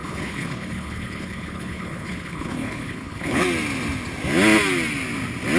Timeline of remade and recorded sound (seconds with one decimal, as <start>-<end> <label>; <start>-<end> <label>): 0.0-3.4 remade; 3.4-5.6 recorded